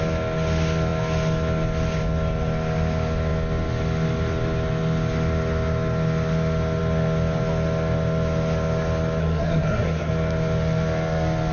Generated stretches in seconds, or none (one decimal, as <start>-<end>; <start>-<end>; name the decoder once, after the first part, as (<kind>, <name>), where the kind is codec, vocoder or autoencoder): 9.2-10.1 (codec, SNAC)